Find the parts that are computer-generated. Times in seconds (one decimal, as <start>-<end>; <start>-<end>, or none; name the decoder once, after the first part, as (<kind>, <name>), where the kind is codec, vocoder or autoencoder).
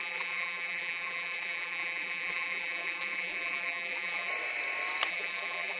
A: 0.0-4.3 (vocoder, BigVGAN v2); 5.1-5.8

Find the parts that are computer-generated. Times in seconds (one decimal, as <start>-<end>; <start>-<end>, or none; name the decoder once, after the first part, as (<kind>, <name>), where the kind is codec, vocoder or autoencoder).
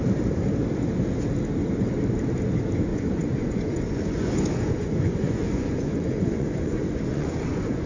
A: 2.9-7.9 (vocoder, Vocos)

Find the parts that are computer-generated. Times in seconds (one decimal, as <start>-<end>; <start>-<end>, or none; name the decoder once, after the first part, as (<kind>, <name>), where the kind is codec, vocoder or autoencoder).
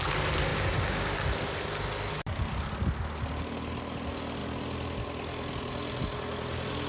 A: none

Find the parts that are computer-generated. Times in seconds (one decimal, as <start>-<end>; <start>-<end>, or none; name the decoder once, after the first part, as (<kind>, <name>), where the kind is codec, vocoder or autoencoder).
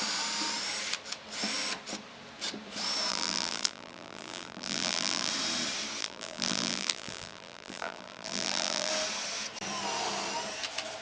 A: 3.1-5.3 (vocoder, BigVGAN v2); 6.0-8.9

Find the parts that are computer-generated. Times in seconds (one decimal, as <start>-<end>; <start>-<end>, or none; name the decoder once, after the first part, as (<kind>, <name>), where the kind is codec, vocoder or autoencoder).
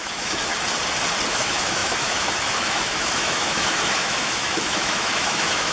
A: 0.0-0.5 (autoencoder, DAC-VAE); 1.3-5.7